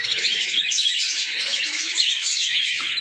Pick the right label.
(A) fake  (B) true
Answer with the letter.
A